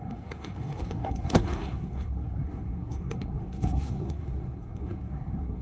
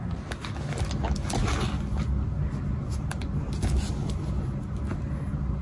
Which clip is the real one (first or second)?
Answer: second